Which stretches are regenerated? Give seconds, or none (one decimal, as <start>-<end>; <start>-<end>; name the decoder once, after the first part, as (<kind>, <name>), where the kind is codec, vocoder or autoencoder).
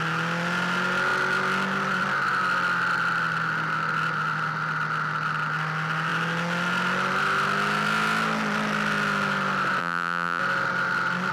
9.8-10.4 (vocoder, BigVGAN v2)